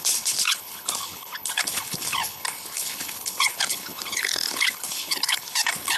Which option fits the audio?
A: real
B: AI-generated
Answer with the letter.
B